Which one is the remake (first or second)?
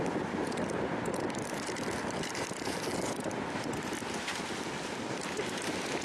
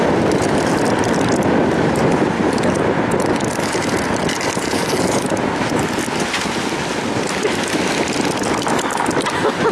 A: first